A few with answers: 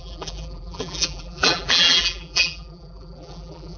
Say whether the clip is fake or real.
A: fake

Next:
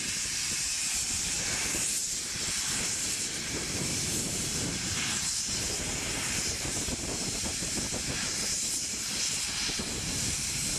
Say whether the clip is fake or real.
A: fake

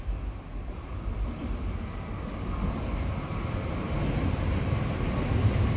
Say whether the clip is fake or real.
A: real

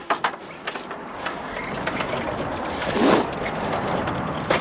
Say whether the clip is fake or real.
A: real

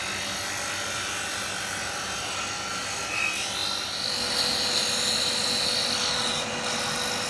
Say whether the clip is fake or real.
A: real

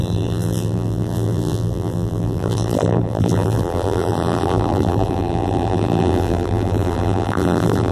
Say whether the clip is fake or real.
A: fake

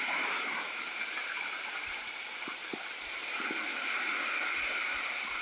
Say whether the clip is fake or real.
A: fake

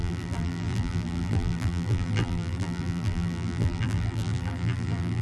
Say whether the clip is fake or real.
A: fake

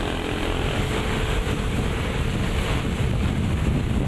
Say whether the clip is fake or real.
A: real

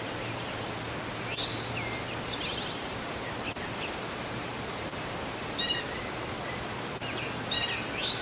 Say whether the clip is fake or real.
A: fake